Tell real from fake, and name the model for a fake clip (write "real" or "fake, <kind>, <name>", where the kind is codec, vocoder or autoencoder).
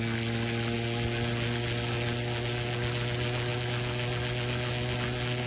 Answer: real